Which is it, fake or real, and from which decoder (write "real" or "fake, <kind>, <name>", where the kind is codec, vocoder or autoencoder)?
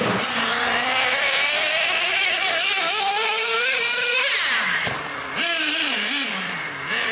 fake, vocoder, BigVGAN v2